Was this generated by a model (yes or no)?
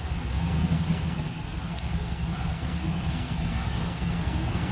yes